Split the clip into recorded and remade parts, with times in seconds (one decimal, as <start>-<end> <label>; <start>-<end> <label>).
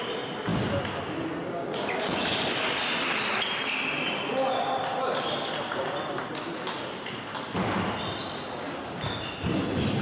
0.0-0.5 recorded; 0.5-1.0 remade; 1.0-10.0 recorded